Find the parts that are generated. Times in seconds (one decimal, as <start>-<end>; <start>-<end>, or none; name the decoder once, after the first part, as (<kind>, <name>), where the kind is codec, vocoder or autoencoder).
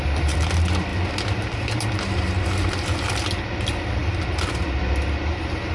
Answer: none